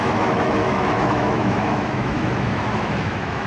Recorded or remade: remade